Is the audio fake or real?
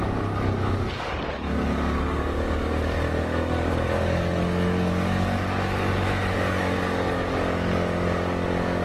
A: fake